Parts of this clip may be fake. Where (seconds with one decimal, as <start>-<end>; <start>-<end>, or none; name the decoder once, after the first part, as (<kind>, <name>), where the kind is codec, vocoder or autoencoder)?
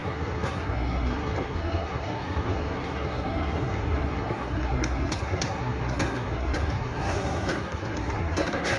0.0-8.8 (codec, SNAC)